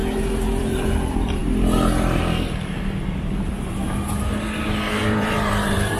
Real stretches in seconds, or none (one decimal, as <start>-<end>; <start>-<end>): 0.0-0.5; 1.4-5.0